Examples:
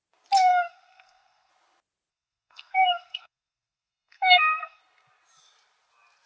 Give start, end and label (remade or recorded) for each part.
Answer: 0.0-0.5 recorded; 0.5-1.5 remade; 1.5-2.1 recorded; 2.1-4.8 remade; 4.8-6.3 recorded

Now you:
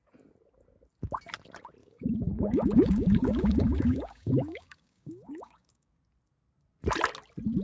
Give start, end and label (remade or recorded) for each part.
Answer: 0.0-1.8 recorded; 1.8-5.9 remade; 5.9-7.6 recorded

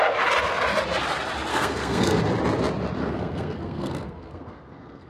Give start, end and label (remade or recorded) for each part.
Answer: 0.0-1.5 recorded; 1.5-2.2 remade; 2.2-3.0 recorded; 3.0-5.1 remade

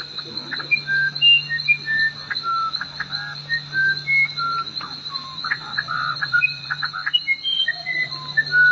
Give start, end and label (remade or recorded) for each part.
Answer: 0.0-5.3 recorded; 5.3-6.7 remade; 6.7-7.5 recorded; 7.5-8.1 remade; 8.1-8.7 recorded